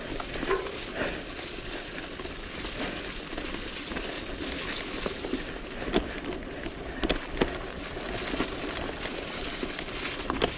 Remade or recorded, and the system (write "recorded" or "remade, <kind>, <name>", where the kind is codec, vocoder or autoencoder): recorded